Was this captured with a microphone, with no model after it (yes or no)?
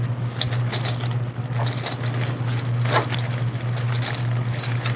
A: yes